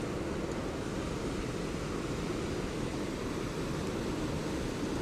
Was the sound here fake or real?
real